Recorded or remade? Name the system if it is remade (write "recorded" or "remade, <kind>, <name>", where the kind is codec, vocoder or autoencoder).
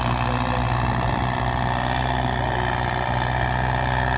recorded